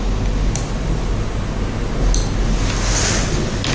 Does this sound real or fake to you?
real